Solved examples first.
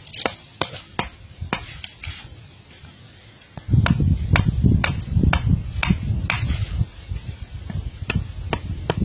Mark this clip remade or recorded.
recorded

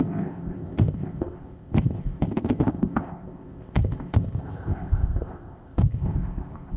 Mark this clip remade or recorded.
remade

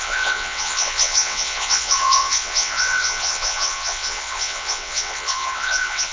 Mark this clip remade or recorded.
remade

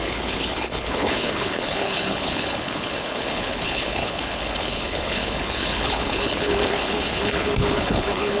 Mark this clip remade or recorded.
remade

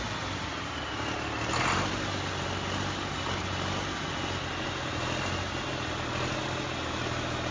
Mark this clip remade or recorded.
recorded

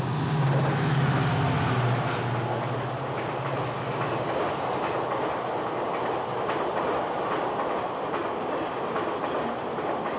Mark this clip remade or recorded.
recorded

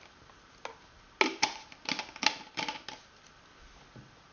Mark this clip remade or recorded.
recorded